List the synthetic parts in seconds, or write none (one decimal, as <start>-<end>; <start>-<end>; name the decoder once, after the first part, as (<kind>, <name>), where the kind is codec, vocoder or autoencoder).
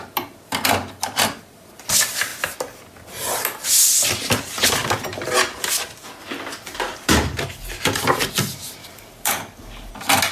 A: 8.8-9.9 (codec, DAC)